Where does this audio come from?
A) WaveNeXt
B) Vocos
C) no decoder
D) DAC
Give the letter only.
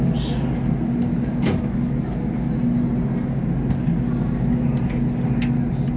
C